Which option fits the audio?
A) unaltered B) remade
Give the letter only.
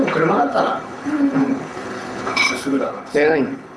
B